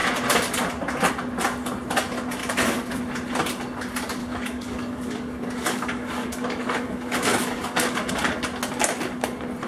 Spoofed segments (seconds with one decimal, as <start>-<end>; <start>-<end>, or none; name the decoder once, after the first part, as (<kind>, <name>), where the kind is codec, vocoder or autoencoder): 2.4-3.0 (codec, DAC); 4.2-8.1